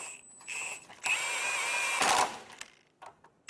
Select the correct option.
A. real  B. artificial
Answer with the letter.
A